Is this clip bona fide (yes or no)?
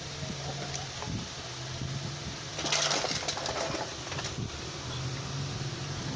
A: yes